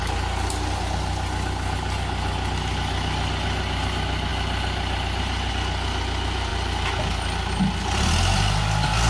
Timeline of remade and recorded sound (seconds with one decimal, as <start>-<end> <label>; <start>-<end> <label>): 0.0-9.1 recorded